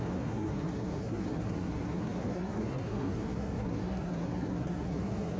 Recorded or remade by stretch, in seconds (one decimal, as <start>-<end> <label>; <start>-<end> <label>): 0.0-5.4 remade